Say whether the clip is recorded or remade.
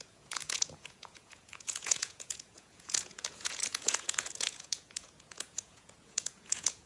remade